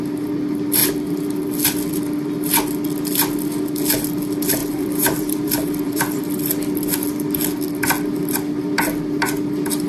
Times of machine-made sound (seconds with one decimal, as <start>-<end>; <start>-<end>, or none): 4.6-6.2